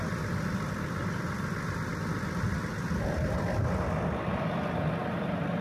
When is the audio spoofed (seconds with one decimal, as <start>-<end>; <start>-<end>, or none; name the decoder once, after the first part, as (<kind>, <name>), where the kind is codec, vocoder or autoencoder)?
0.0-1.9 (vocoder, BigVGAN v2); 2.4-5.6